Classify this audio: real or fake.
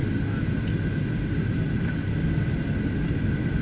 real